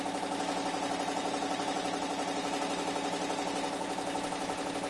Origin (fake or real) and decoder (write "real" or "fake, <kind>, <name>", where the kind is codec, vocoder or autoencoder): real